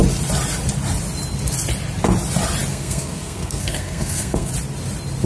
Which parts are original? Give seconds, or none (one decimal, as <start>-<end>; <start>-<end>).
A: 0.0-2.7; 4.5-5.3